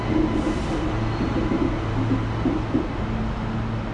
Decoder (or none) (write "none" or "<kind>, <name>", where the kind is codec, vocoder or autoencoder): none